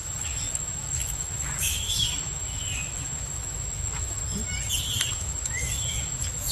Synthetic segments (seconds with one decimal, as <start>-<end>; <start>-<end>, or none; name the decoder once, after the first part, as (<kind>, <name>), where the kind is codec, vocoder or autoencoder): 0.0-4.2 (autoencoder, DAC-VAE); 5.1-6.5